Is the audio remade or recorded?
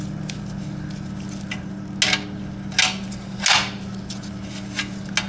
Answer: recorded